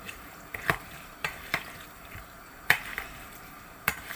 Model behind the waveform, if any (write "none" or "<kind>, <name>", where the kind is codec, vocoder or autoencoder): vocoder, BigVGAN v2